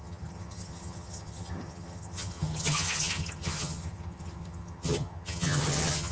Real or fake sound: fake